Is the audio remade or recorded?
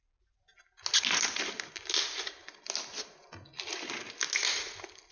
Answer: recorded